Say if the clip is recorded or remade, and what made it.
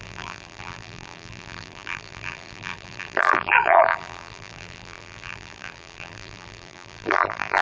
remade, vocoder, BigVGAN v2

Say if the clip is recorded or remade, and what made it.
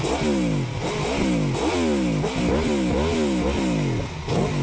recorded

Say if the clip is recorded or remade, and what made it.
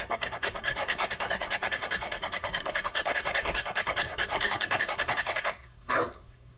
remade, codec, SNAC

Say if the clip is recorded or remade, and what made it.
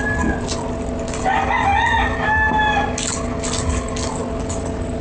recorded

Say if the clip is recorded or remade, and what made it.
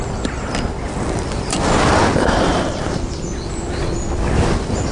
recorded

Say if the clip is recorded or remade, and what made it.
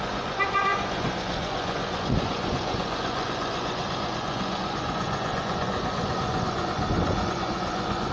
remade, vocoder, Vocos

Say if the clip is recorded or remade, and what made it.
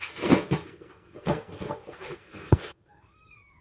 remade, codec, SNAC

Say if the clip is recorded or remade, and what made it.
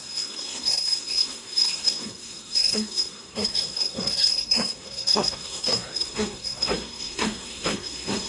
remade, codec, SNAC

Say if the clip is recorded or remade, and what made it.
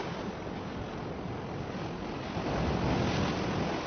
recorded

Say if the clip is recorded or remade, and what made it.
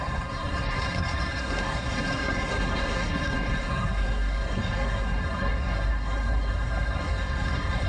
remade, codec, SNAC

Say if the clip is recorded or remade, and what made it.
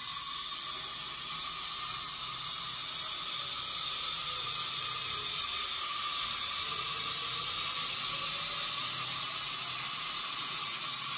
recorded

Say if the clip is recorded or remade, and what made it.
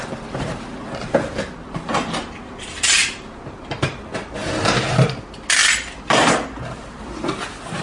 recorded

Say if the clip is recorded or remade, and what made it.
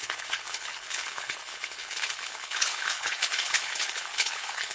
remade, codec, HILCodec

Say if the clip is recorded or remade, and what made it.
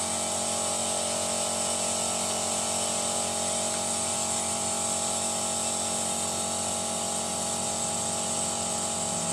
recorded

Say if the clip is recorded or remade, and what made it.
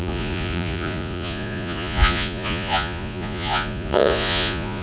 remade, vocoder, Vocos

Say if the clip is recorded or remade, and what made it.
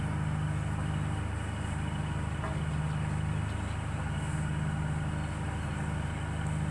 recorded